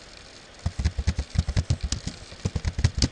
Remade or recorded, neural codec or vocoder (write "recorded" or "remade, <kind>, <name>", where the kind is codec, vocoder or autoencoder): recorded